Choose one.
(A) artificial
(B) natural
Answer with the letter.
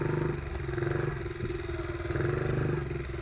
B